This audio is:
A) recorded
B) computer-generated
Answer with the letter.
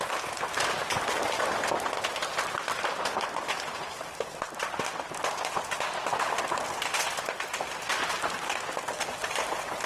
A